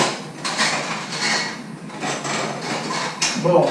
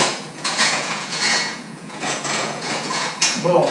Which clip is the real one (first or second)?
first